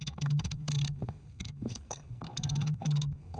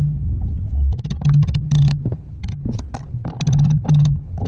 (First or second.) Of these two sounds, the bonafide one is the second